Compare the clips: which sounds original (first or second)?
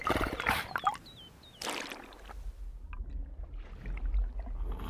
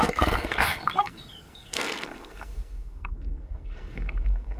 first